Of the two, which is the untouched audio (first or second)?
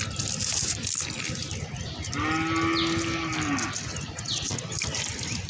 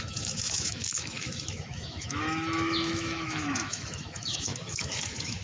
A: first